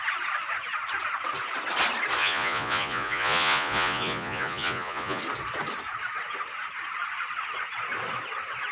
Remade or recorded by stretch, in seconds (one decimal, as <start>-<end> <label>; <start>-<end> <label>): 0.0-2.2 recorded; 2.2-5.2 remade; 5.2-8.7 recorded